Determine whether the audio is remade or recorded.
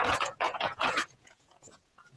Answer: remade